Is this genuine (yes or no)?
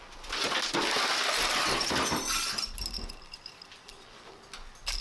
yes